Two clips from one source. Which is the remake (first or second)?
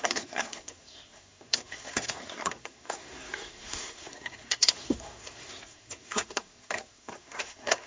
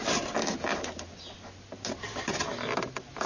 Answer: first